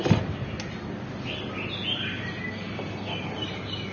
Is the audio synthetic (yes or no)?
no